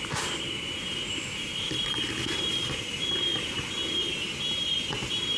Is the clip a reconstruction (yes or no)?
no